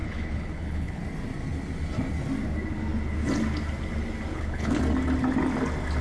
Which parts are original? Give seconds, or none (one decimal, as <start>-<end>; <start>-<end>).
1.0-4.3; 4.8-6.0